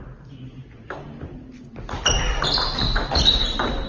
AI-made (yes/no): no